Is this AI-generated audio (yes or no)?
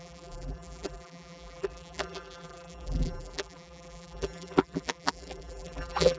yes